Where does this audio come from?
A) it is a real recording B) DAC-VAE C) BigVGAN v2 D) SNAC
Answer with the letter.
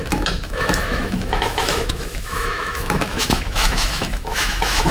B